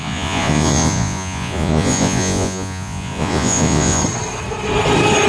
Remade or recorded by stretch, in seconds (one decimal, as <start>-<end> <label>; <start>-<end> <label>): 0.0-4.0 remade; 4.0-5.3 recorded